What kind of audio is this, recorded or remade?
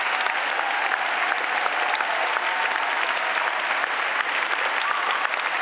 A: recorded